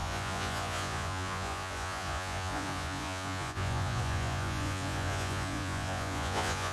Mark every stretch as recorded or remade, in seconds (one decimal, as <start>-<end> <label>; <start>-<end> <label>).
0.0-6.7 remade